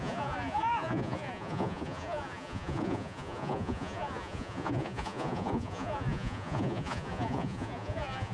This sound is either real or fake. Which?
fake